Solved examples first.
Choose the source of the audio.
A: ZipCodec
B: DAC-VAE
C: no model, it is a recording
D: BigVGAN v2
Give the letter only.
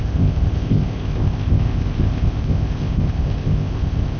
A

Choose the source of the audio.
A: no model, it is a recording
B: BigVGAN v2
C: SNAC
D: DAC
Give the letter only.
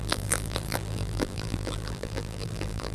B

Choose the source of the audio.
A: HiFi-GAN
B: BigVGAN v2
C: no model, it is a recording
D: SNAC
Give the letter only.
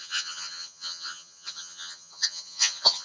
A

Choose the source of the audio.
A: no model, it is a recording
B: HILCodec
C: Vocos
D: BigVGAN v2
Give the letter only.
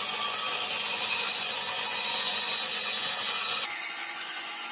C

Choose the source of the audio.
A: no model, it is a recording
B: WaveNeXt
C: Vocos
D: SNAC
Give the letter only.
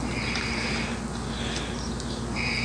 A